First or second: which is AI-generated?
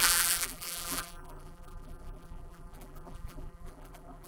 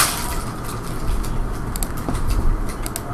first